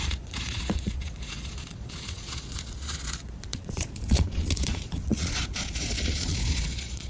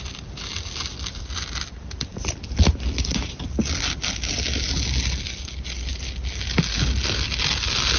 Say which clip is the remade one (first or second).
first